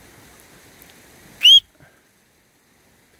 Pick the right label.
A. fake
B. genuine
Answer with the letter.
B